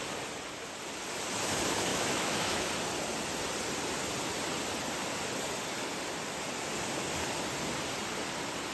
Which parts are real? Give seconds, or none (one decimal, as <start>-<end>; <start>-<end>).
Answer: 0.0-1.9; 2.7-8.7